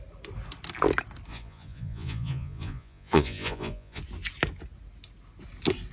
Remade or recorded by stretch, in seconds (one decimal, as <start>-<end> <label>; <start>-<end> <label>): 0.0-1.3 recorded; 1.3-4.0 remade; 4.0-5.9 recorded